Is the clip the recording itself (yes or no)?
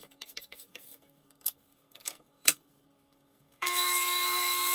no